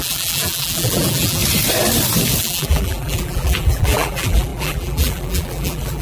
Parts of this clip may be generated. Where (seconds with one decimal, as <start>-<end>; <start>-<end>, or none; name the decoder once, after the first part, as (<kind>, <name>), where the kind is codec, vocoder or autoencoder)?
0.0-1.4 (vocoder, BigVGAN v2); 2.4-6.0